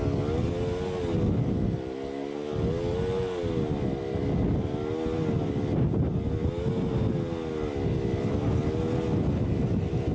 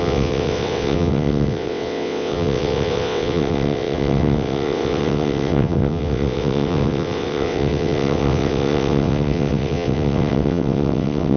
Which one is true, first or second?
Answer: first